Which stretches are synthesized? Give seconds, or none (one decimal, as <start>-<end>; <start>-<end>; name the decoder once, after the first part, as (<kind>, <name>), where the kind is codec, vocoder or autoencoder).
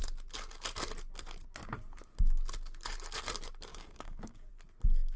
3.7-4.5 (codec, DAC)